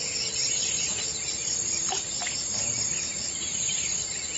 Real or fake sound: real